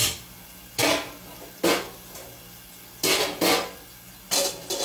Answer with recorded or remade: recorded